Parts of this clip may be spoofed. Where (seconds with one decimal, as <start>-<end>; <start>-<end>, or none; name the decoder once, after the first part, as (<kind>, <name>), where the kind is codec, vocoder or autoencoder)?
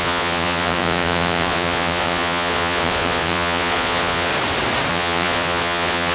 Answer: 0.0-4.3 (vocoder, Vocos); 4.9-6.1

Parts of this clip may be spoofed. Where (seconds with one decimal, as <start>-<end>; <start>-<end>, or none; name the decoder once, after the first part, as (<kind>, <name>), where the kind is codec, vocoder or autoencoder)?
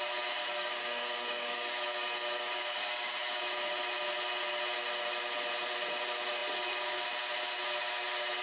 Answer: 0.4-3.4 (codec, DAC)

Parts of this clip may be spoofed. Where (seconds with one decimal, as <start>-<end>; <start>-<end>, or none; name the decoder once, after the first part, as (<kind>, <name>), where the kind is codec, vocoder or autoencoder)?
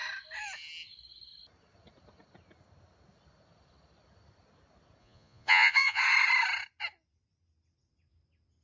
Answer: 5.0-6.0 (vocoder, Vocos)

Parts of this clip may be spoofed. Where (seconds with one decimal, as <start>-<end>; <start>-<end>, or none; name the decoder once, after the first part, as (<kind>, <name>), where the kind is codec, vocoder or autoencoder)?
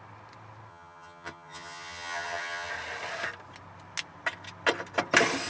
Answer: 0.7-2.7 (vocoder, HiFi-GAN)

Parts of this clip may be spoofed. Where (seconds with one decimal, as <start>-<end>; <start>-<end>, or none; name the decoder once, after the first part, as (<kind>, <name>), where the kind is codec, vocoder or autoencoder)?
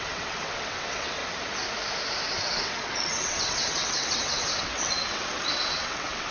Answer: 0.0-1.2 (vocoder, WaveNeXt); 2.3-6.3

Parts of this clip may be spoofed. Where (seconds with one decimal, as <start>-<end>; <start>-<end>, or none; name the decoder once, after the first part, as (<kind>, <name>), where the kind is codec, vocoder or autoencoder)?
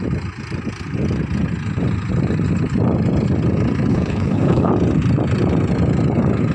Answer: 3.9-4.7 (codec, HILCodec)